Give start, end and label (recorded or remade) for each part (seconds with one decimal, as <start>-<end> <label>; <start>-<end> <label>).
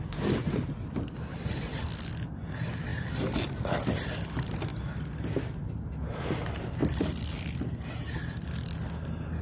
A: 0.0-2.9 recorded; 2.9-3.4 remade; 3.4-6.8 recorded; 6.8-7.7 remade; 7.7-9.4 recorded